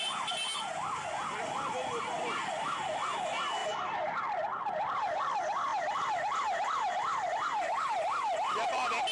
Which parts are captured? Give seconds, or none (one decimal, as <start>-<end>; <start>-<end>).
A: 0.0-3.6; 5.2-5.7; 8.1-9.1

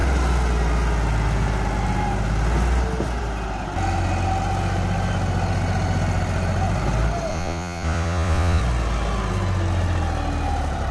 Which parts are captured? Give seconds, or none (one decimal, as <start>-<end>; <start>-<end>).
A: 0.0-7.3; 8.6-10.9